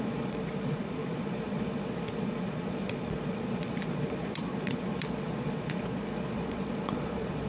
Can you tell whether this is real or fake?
fake